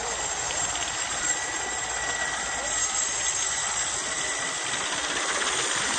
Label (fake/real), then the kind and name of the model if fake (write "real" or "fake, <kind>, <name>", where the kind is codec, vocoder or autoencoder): real